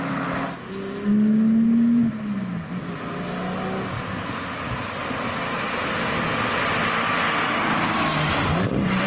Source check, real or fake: real